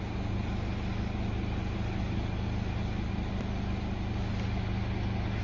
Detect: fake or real real